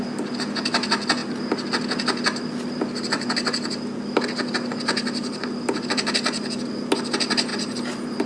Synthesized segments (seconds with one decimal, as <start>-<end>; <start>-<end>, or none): none